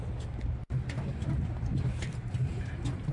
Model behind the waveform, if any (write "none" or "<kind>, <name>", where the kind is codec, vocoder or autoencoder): none